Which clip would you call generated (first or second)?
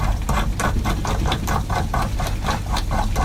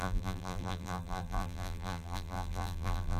second